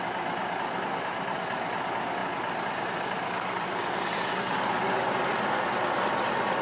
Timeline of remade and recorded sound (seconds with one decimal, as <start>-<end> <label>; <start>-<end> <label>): 0.0-6.6 recorded